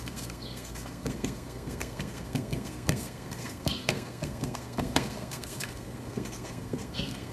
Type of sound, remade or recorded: remade